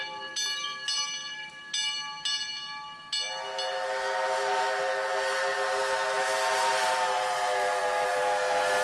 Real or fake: real